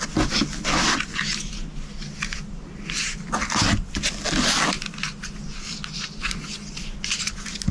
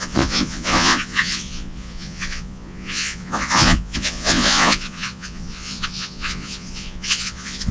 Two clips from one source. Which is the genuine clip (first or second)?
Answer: first